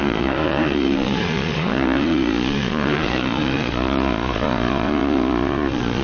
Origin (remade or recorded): remade